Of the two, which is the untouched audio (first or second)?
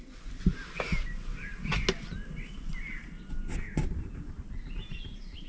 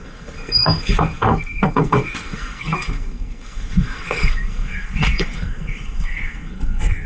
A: first